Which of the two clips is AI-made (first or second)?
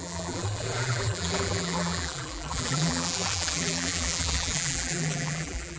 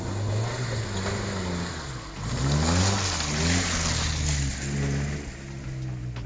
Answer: first